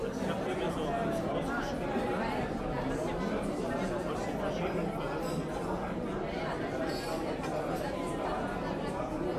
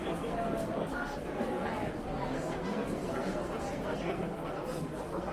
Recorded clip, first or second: first